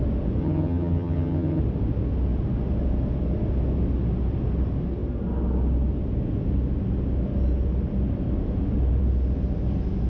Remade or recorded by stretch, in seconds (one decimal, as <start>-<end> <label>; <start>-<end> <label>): 0.0-0.4 recorded; 0.4-1.6 remade; 1.6-10.1 recorded